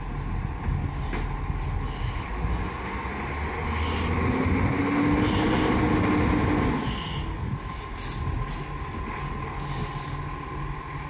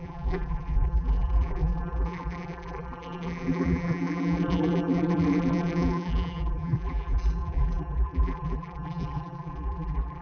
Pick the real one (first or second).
first